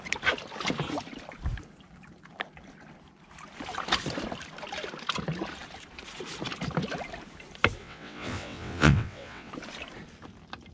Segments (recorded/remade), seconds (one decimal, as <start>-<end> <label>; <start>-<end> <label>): 0.0-7.8 recorded; 7.8-9.5 remade; 9.5-10.7 recorded